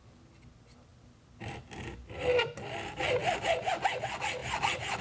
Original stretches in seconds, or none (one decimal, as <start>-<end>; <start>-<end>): 0.0-3.2; 3.7-4.4

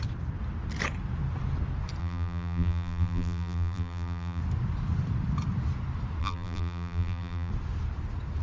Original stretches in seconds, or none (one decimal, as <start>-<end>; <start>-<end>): 0.0-2.0; 4.4-6.2; 7.5-8.4

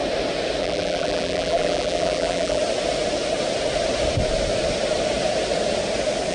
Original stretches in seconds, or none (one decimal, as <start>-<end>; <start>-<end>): 0.0-0.6; 2.6-6.3

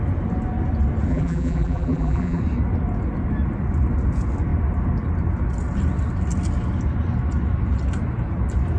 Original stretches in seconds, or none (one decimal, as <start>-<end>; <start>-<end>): 0.0-1.1; 2.4-8.8

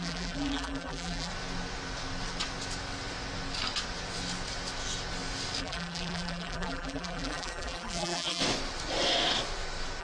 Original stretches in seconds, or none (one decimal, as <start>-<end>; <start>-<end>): 1.3-5.6; 8.4-10.0

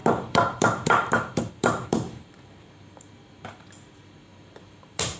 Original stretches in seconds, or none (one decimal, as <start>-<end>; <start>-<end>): 3.1-4.3

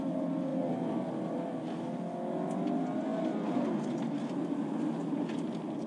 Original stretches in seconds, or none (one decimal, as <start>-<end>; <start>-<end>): 0.0-3.1; 5.1-5.9